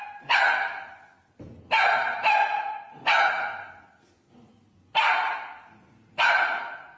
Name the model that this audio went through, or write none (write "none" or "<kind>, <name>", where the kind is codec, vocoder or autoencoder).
none